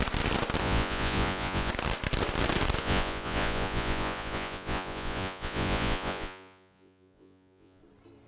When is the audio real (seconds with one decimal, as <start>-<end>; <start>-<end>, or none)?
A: 0.0-0.6; 1.7-2.8; 7.8-8.3